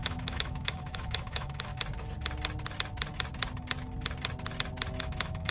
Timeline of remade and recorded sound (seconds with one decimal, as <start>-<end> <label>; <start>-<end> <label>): 0.0-1.7 remade; 1.7-5.0 recorded; 5.0-5.5 remade